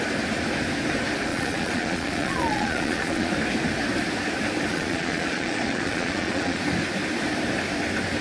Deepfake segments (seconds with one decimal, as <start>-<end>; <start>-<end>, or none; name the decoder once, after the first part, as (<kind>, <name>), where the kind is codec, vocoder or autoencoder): 1.3-3.3 (vocoder, Vocos); 4.7-6.6